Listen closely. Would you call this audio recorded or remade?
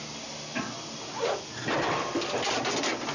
recorded